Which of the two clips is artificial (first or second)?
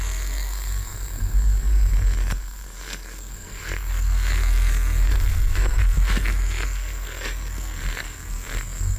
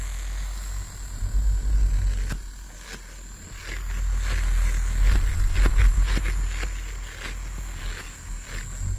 first